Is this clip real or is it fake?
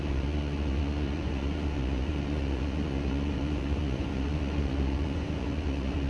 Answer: fake